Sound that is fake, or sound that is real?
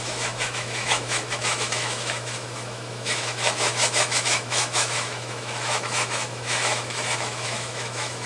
fake